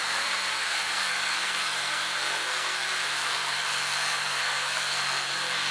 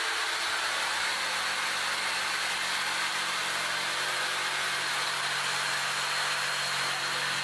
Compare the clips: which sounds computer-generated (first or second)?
first